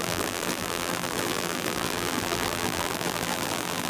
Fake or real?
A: fake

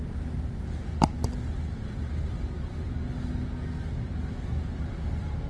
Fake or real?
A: real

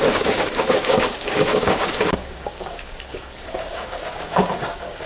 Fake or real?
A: fake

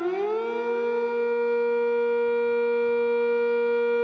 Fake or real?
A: real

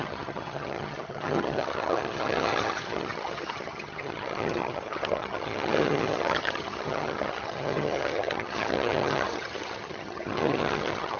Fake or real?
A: fake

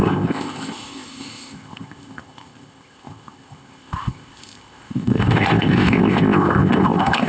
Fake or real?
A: fake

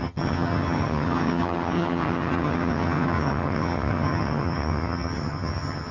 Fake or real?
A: fake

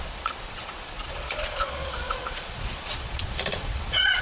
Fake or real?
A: fake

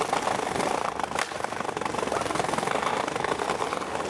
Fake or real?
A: real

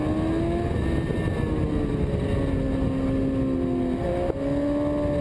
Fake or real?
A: real